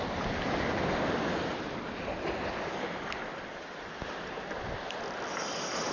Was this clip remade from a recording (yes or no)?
no